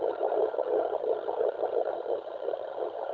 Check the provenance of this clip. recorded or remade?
remade